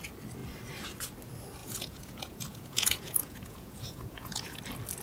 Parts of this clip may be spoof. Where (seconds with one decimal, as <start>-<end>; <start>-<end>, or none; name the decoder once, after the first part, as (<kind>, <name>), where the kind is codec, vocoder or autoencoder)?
1.6-4.6 (vocoder, Vocos)